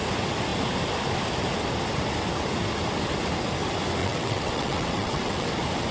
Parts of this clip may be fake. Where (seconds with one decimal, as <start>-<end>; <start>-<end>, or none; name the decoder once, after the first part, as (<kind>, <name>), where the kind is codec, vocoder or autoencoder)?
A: 4.0-5.5 (vocoder, WaveNeXt)